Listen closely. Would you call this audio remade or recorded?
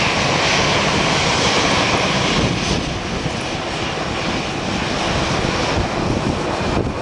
recorded